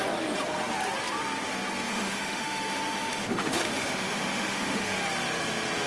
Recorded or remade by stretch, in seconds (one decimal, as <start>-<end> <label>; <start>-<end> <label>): 0.0-1.9 recorded; 1.9-4.8 remade; 4.8-5.9 recorded